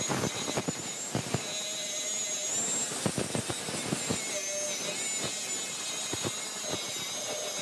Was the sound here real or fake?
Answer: real